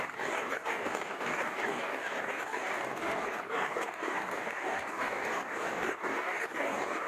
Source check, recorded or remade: remade